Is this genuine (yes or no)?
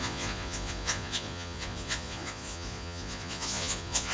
no